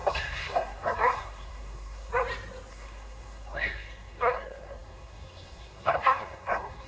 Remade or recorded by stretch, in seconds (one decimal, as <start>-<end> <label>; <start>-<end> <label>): 0.0-2.1 remade; 2.1-2.7 recorded; 2.7-6.9 remade